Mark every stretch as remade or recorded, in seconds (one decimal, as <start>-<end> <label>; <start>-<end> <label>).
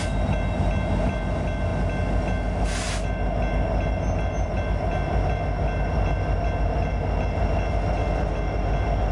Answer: 0.0-9.1 recorded